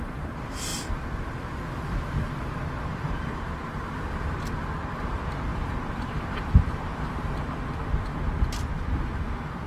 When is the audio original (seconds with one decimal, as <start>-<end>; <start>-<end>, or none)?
0.7-2.8; 8.1-9.7